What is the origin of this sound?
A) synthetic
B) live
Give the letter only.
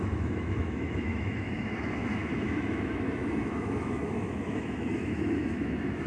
A